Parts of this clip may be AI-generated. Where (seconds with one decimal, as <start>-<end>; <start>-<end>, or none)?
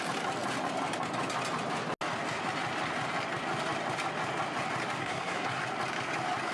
5.0-5.6